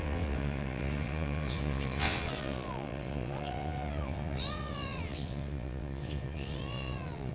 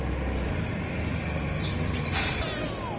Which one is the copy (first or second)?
first